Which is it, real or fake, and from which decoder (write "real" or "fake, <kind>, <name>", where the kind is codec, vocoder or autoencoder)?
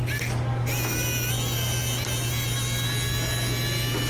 real